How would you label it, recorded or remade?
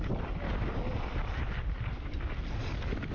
recorded